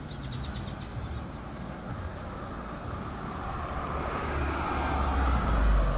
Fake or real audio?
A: real